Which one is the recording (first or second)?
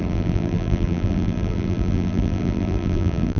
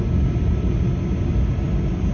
second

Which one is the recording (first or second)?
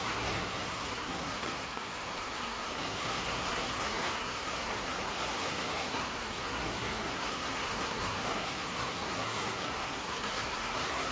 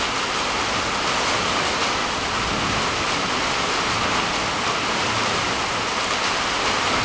second